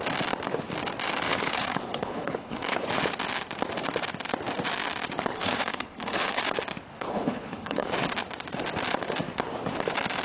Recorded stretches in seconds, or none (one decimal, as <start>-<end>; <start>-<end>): 0.0-1.3; 2.9-5.3; 6.4-6.9; 7.9-10.2